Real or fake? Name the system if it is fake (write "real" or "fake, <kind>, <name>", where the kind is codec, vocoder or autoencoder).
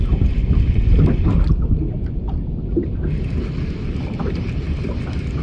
fake, vocoder, BigVGAN v2